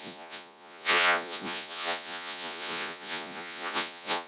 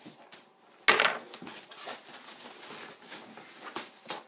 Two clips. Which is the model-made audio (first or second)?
first